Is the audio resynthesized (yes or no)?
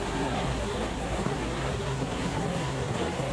yes